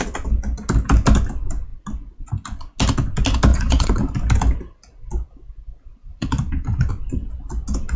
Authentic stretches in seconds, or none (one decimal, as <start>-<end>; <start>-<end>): 0.0-3.5; 4.0-6.0; 6.9-8.0